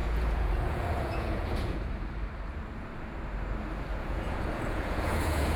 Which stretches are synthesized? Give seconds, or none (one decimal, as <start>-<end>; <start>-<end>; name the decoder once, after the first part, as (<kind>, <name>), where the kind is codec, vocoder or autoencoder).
0.0-1.8 (vocoder, Vocos); 3.9-5.6